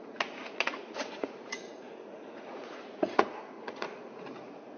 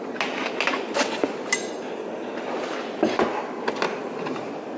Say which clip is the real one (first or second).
second